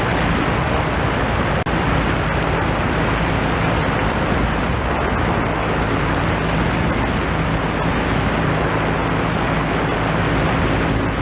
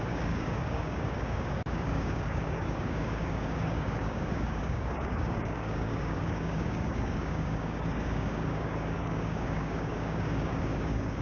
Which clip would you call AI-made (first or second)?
second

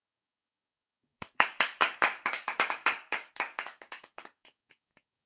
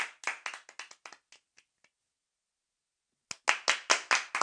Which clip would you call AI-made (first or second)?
first